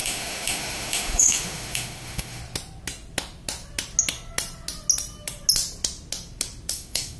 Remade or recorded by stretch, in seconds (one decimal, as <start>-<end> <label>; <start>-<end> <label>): 0.0-2.4 remade; 2.4-6.7 recorded; 6.7-7.2 remade

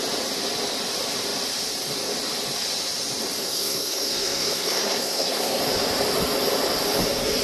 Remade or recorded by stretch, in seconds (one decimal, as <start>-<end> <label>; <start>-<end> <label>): 0.0-3.4 recorded; 3.4-5.6 remade; 5.6-7.4 recorded

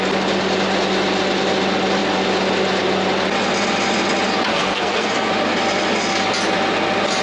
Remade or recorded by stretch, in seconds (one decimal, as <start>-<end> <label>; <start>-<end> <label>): 0.0-4.5 recorded; 4.5-5.3 remade; 5.3-7.2 recorded

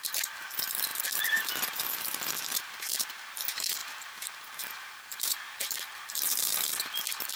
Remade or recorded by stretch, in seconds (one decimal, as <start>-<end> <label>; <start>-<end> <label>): 0.0-7.4 remade

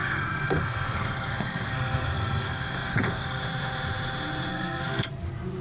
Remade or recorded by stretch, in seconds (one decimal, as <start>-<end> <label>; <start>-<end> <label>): 0.0-3.4 remade; 3.4-4.5 recorded; 4.5-5.1 remade; 5.1-5.6 recorded

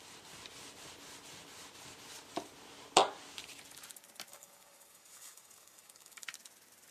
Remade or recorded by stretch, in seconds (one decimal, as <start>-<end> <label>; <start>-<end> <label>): 0.0-4.3 recorded; 4.3-6.2 remade; 6.2-6.9 recorded

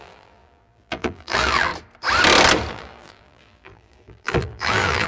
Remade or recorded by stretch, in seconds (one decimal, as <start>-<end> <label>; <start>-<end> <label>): 0.0-1.7 remade; 1.7-2.7 recorded; 2.7-5.1 remade